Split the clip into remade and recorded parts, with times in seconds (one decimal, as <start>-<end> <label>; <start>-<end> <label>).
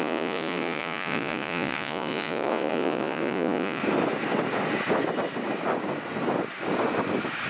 0.0-3.8 remade; 3.8-7.5 recorded